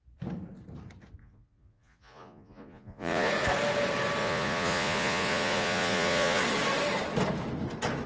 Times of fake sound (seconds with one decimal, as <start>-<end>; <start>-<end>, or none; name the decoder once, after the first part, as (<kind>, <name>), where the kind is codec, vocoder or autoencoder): 1.2-3.3 (vocoder, Vocos); 4.2-6.4